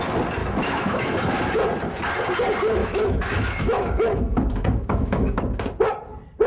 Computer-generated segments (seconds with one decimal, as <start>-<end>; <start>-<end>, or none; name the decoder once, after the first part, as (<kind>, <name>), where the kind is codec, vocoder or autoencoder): 0.4-1.1 (autoencoder, DAC-VAE); 2.8-5.4